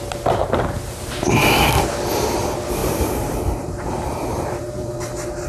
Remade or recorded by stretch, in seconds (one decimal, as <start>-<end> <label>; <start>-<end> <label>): 0.0-0.4 recorded; 0.4-1.3 remade; 1.3-2.8 recorded; 2.8-4.9 remade; 4.9-5.5 recorded